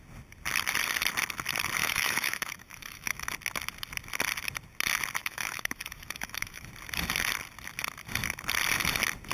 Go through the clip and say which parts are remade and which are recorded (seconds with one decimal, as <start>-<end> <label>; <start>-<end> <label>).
0.0-1.8 recorded; 1.8-3.3 remade; 3.3-5.2 recorded; 5.2-6.7 remade; 6.7-9.3 recorded